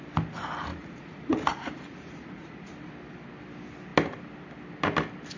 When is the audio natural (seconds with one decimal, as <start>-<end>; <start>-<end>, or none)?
0.0-0.7; 2.9-5.4